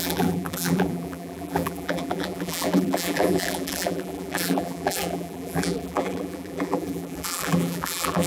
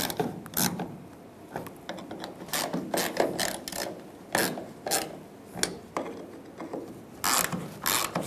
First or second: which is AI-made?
first